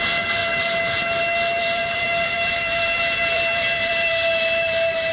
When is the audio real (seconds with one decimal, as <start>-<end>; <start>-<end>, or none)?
0.0-0.4; 1.2-1.6